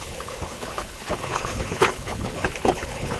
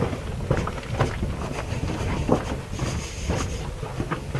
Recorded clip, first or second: second